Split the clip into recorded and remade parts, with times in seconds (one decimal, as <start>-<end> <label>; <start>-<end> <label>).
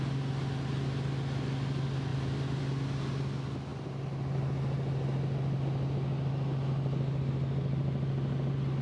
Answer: 0.0-2.1 recorded; 2.1-2.6 remade; 2.6-8.8 recorded